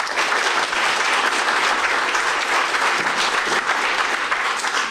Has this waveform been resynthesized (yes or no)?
no